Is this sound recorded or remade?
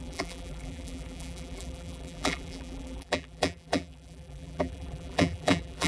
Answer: remade